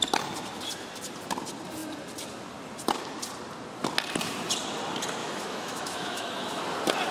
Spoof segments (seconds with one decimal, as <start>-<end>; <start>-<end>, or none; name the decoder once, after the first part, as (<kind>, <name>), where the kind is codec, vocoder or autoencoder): 5.2-6.6 (autoencoder, DAC-VAE)